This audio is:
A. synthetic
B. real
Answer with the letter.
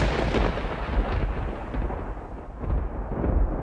B